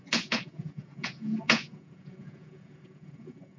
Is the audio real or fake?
fake